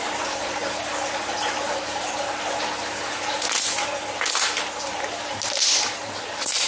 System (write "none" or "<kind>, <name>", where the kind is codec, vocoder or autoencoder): none